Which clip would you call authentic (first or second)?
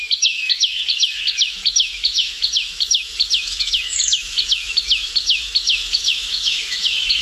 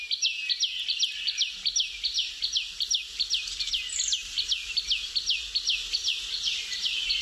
second